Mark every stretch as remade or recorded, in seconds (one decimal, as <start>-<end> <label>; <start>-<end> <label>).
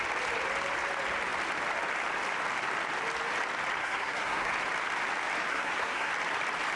0.0-3.8 recorded; 3.8-4.5 remade; 4.5-5.5 recorded; 5.5-6.1 remade; 6.1-6.8 recorded